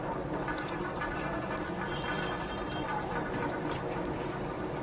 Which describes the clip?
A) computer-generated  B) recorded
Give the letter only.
B